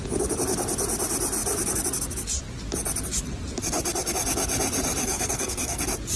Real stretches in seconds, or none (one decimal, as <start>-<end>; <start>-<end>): 0.0-5.0; 5.8-6.2